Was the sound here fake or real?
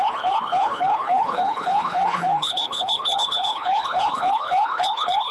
fake